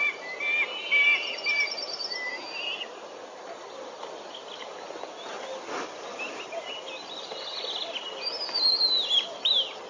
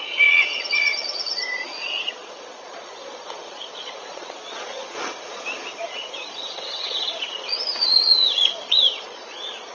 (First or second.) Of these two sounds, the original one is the first